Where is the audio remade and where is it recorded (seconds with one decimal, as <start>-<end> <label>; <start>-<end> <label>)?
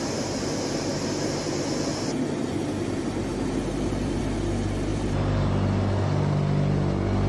0.0-3.3 recorded; 3.3-4.2 remade; 4.2-4.9 recorded; 4.9-5.5 remade; 5.5-7.3 recorded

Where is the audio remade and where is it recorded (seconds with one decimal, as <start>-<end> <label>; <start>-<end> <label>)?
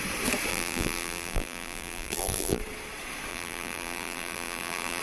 0.0-0.5 recorded; 0.5-2.6 remade; 2.6-3.3 recorded; 3.3-5.0 remade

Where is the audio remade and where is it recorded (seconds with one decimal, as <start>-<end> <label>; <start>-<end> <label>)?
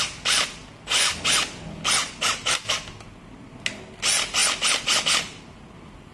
0.0-6.1 recorded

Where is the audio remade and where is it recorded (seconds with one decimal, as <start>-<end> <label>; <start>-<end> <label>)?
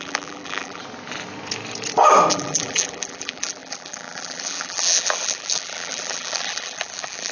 0.0-0.8 remade; 0.8-2.3 recorded; 2.3-7.3 remade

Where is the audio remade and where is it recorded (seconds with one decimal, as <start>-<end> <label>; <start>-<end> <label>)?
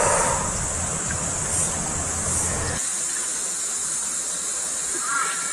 0.0-2.9 recorded; 2.9-3.4 remade; 3.4-3.8 recorded; 3.8-5.5 remade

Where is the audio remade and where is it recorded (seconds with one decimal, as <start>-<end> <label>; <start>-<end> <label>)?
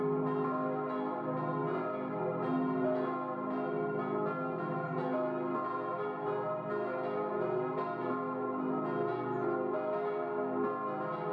0.0-11.3 recorded